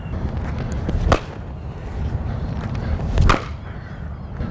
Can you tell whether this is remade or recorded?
recorded